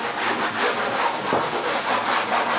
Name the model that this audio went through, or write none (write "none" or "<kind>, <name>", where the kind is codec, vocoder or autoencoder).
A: none